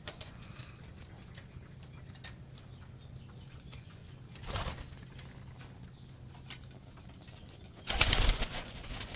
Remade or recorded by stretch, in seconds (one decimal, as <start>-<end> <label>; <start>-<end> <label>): 0.0-0.5 remade; 0.5-3.5 recorded; 3.5-4.0 remade; 4.0-7.4 recorded; 7.4-9.2 remade